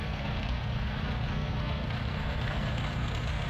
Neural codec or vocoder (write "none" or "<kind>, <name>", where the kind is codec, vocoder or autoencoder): codec, SNAC